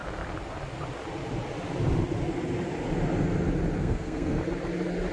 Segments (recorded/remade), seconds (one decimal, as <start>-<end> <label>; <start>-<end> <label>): 0.0-3.8 recorded; 3.8-4.4 remade; 4.4-5.1 recorded